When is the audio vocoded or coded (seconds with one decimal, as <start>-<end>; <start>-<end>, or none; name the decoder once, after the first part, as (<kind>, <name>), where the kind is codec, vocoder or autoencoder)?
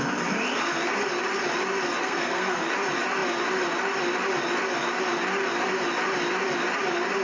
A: 2.0-2.6 (codec, SNAC)